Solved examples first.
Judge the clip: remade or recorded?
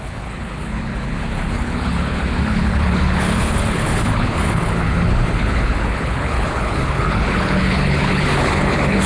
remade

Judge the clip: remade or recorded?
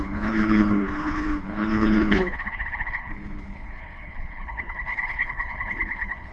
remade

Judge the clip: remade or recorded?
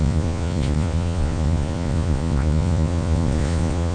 remade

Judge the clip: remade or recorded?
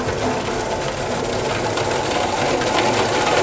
recorded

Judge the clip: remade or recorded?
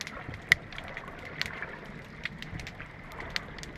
recorded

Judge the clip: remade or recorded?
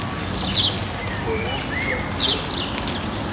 recorded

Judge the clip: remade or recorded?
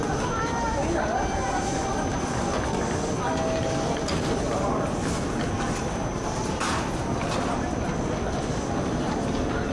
recorded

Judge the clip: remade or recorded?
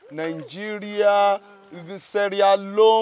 recorded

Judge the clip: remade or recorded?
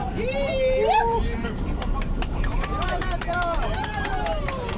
remade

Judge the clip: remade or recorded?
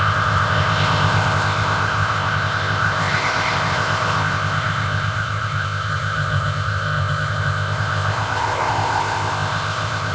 remade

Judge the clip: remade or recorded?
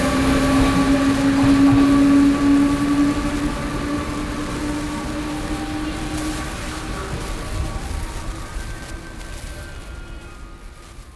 recorded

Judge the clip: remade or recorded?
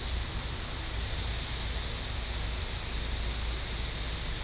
recorded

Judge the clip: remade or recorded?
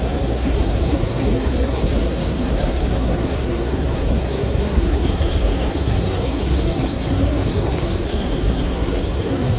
remade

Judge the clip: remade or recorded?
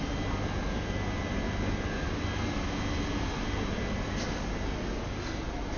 recorded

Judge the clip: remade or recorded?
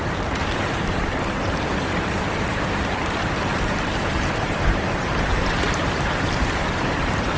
remade